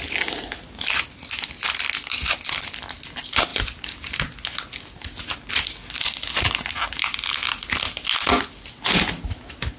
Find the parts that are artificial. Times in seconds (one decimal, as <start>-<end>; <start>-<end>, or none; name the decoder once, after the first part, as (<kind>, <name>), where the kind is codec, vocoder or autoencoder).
none